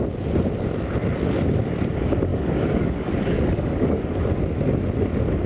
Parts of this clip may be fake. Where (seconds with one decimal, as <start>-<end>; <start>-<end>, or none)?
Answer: 2.3-4.2